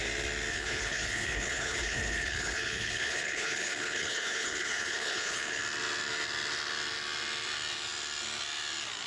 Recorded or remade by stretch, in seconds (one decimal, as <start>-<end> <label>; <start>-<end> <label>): 0.0-0.5 recorded; 0.5-5.6 remade; 5.6-9.1 recorded